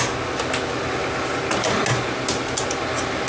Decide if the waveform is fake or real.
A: real